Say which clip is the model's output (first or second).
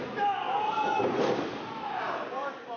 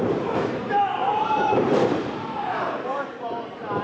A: second